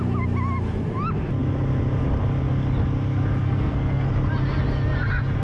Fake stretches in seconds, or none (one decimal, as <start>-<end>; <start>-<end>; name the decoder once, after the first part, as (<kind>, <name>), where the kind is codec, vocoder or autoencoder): 3.4-4.1 (codec, SNAC)